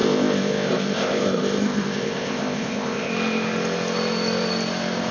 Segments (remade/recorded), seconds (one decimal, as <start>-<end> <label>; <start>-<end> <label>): 0.0-3.1 remade; 3.1-5.1 recorded